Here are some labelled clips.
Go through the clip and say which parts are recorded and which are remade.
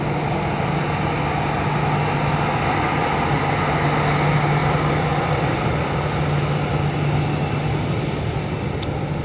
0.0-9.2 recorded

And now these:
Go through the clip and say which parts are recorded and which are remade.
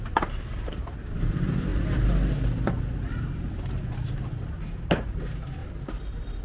0.0-1.7 recorded; 1.7-2.3 remade; 2.3-5.6 recorded; 5.6-6.4 remade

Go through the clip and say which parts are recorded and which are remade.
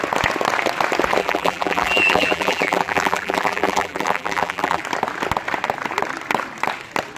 0.0-1.2 recorded; 1.2-4.8 remade; 4.8-7.2 recorded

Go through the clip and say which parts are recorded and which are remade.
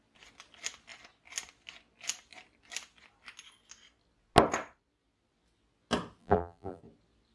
0.0-6.2 recorded; 6.2-6.8 remade; 6.8-7.3 recorded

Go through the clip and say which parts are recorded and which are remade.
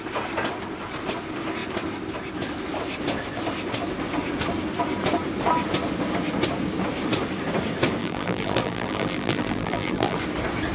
0.0-8.0 recorded; 8.0-10.2 remade; 10.2-10.7 recorded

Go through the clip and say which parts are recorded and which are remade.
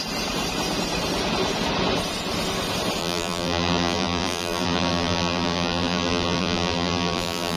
0.0-3.0 recorded; 3.0-7.6 remade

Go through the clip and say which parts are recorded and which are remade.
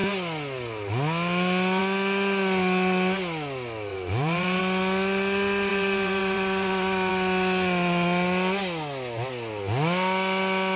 0.0-3.9 recorded; 3.9-4.6 remade; 4.6-5.7 recorded; 5.7-7.1 remade; 7.1-10.8 recorded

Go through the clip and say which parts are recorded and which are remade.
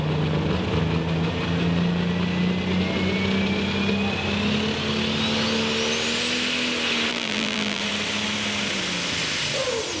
0.0-7.1 recorded; 7.1-7.8 remade; 7.8-10.0 recorded